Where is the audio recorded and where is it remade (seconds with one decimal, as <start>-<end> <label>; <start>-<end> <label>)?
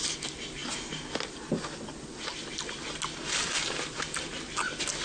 0.0-5.0 recorded